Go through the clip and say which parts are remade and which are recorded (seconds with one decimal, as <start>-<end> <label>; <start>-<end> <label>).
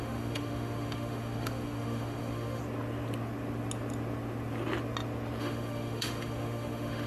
0.0-2.6 remade; 2.6-5.4 recorded; 5.4-7.1 remade